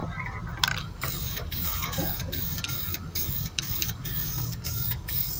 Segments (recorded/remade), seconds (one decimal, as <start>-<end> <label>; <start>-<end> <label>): 0.0-0.8 recorded; 0.8-5.4 remade